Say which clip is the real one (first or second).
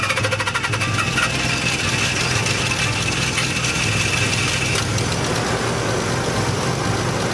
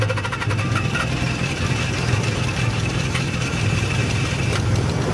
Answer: first